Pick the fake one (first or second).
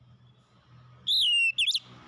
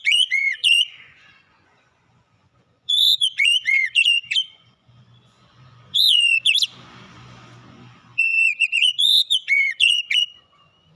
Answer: second